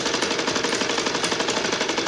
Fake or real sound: real